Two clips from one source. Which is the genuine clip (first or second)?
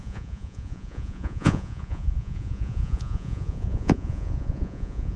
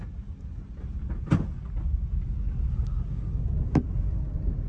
second